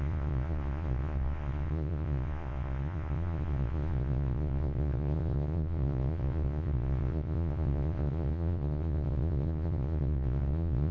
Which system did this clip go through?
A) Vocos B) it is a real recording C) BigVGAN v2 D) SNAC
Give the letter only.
A